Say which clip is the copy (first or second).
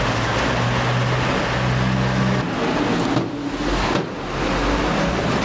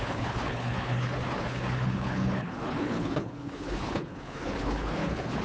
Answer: second